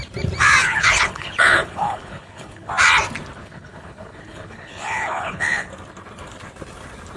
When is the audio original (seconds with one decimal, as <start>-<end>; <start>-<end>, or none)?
0.0-0.6; 2.7-3.4; 5.7-7.2